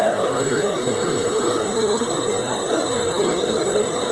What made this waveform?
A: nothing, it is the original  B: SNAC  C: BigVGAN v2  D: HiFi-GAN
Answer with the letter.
B